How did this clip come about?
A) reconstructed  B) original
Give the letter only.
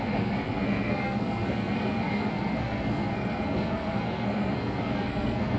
A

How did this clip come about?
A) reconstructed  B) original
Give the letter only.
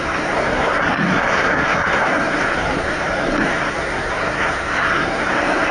A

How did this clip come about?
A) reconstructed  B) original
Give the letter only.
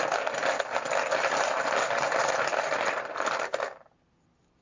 B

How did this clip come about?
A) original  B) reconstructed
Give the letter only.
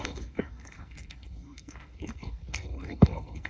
B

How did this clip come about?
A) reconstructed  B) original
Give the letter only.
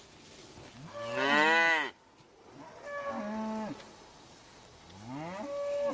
B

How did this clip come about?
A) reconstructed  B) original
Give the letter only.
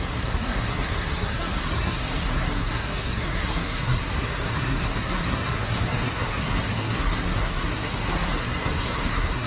A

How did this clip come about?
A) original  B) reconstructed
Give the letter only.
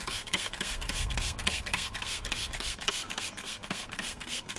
B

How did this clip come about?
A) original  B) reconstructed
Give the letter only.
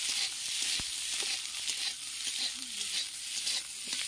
A